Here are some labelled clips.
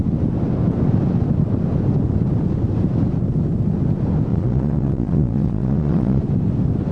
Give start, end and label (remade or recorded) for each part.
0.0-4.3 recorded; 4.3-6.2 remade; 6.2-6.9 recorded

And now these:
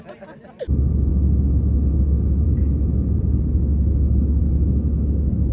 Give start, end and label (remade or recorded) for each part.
0.0-5.5 recorded

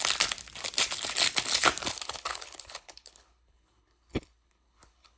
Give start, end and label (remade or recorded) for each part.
0.0-1.9 recorded; 1.9-5.2 remade

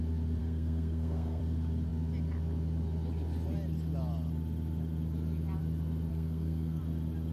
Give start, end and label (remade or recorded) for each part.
0.0-0.4 recorded; 0.4-1.4 remade; 1.4-6.1 recorded; 6.1-6.8 remade; 6.8-7.3 recorded

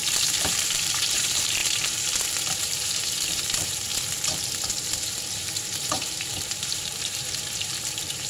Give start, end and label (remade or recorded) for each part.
0.0-1.6 remade; 1.6-2.6 recorded; 2.6-3.9 remade; 3.9-4.7 recorded; 4.7-8.3 remade